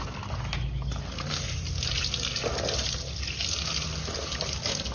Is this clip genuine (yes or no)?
yes